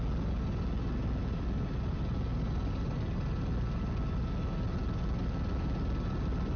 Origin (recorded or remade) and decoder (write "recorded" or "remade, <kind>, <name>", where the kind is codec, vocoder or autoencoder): recorded